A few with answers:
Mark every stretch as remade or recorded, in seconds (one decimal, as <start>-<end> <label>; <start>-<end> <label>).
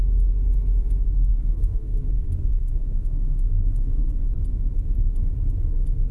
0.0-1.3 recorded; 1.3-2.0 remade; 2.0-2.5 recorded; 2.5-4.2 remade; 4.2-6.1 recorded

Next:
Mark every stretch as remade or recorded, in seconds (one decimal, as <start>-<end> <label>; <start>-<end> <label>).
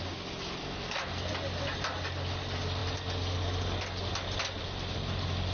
0.0-0.6 recorded; 0.6-1.3 remade; 1.3-5.5 recorded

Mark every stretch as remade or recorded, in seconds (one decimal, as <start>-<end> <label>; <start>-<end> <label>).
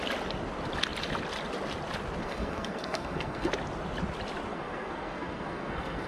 0.0-2.2 recorded; 2.2-3.5 remade; 3.5-4.5 recorded; 4.5-6.1 remade